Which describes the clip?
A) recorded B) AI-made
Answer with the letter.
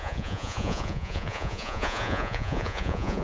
B